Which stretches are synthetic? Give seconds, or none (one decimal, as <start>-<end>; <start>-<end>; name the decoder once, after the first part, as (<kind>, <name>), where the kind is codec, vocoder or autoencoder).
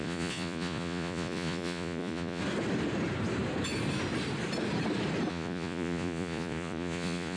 0.0-2.4 (vocoder, Vocos); 5.3-7.4